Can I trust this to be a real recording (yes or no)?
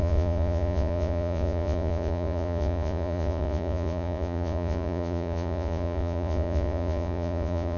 no